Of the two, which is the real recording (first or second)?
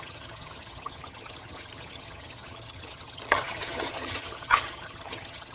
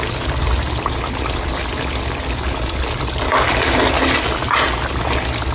second